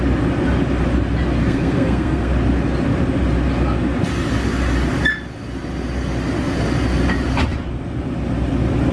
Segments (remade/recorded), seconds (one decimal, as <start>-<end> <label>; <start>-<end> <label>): 0.0-1.4 recorded; 1.4-2.3 remade; 2.3-8.9 recorded